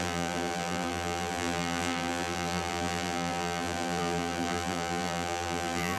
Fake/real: fake